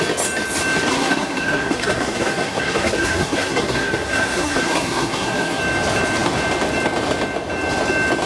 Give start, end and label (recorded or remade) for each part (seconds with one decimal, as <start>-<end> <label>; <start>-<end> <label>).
0.0-0.9 recorded; 0.9-5.6 remade; 5.6-8.3 recorded